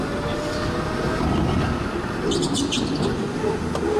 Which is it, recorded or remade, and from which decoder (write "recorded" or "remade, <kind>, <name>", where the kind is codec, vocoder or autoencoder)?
recorded